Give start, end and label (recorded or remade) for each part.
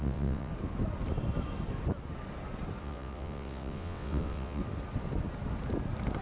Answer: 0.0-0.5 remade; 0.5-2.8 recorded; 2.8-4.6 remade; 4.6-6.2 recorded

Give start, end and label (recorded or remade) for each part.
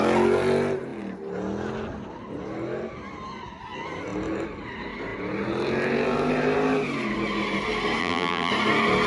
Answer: 0.0-8.0 recorded; 8.0-8.5 remade; 8.5-9.1 recorded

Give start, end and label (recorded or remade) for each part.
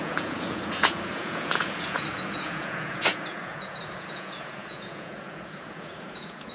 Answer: 0.0-6.5 remade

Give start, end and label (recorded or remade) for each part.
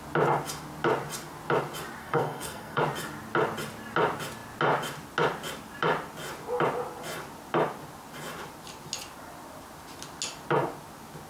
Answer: 0.0-2.0 recorded; 2.0-2.8 remade; 2.8-11.3 recorded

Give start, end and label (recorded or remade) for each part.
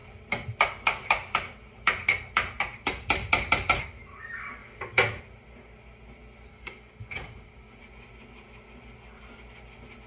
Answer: 0.0-4.6 recorded; 4.6-5.2 remade; 5.2-6.5 recorded; 6.5-7.8 remade; 7.8-10.1 recorded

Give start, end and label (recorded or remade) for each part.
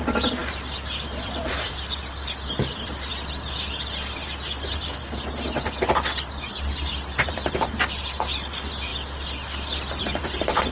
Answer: 0.0-4.2 remade; 4.2-7.3 recorded; 7.3-10.7 remade